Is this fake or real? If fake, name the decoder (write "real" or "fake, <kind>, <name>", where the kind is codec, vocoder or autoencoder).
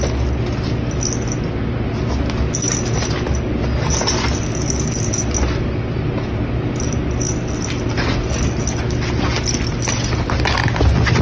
real